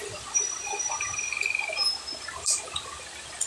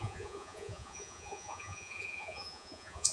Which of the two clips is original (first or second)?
first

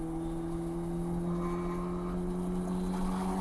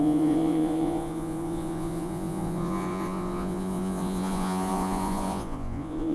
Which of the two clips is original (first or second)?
first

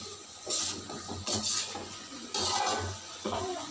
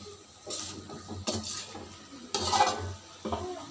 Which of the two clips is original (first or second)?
second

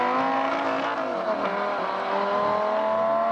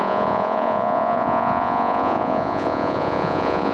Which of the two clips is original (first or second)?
first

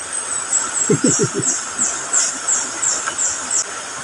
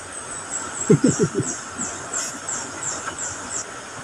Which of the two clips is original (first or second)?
first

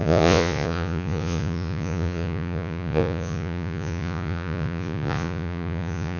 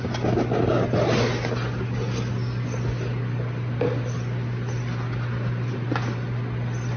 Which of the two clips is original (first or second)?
second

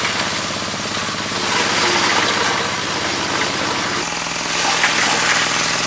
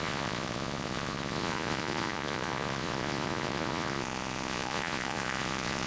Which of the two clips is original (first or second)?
first